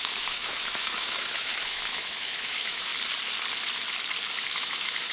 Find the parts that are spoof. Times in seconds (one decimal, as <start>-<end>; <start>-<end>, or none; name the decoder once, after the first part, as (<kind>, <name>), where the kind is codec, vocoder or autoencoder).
0.0-2.9 (autoencoder, DAC-VAE); 4.4-5.1